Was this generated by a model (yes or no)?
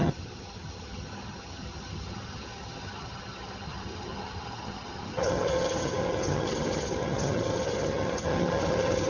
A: yes